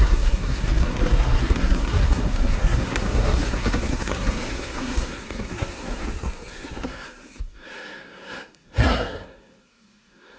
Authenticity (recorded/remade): remade